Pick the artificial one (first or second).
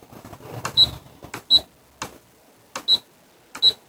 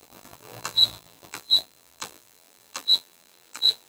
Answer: second